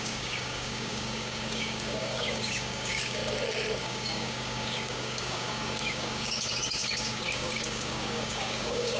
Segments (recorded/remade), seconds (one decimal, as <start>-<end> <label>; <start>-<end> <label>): 0.0-3.2 remade; 3.2-3.8 recorded; 3.8-9.0 remade